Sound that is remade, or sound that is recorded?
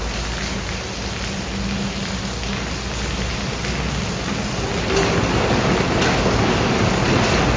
recorded